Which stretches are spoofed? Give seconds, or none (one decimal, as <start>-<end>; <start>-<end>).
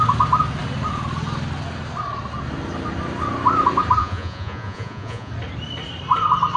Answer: 4.0-5.3